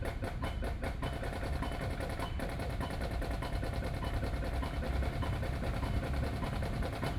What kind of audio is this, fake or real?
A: fake